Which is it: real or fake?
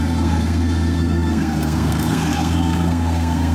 fake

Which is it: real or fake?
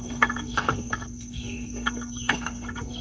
fake